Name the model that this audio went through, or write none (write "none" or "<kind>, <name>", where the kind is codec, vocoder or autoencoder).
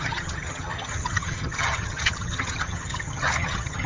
vocoder, HiFi-GAN